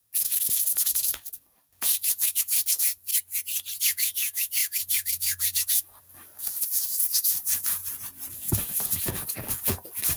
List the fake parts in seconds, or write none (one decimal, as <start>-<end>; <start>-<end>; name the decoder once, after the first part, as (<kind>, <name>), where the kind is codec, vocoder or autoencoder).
0.0-3.1 (codec, DAC); 3.8-7.8; 8.3-10.2